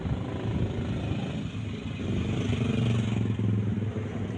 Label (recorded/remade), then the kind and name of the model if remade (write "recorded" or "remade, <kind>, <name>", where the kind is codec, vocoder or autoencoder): recorded